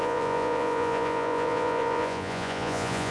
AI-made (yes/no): yes